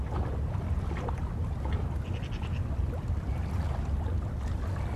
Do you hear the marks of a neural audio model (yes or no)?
no